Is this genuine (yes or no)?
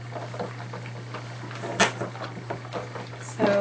yes